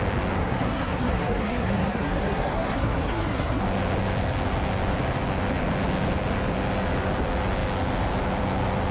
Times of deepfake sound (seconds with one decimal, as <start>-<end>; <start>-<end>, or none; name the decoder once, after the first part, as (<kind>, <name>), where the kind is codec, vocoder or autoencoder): 0.4-3.6 (codec, SNAC)